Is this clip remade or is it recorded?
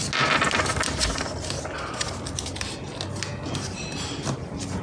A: recorded